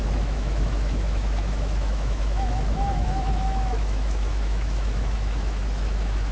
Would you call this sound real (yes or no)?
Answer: no